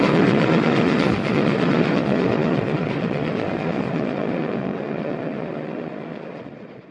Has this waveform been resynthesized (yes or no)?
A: yes